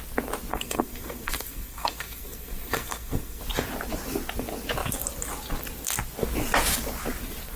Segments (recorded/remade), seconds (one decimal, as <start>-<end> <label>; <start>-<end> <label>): 0.0-0.5 recorded; 0.5-3.4 remade; 3.4-7.6 recorded